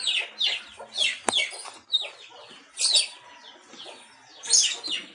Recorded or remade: recorded